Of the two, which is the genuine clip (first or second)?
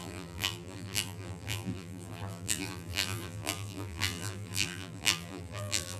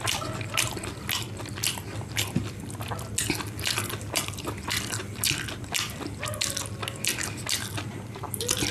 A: second